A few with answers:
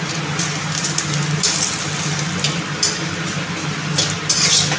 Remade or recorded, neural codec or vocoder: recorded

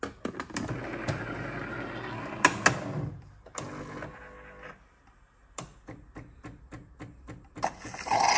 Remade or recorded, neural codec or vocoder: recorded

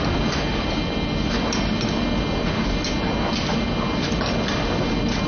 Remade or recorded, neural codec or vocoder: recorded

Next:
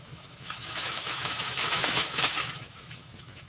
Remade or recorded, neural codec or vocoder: remade, autoencoder, DAC-VAE